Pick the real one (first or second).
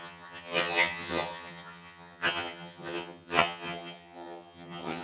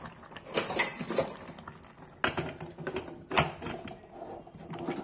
second